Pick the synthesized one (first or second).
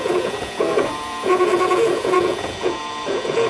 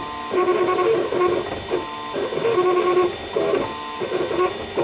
first